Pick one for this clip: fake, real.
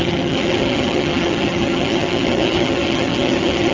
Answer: fake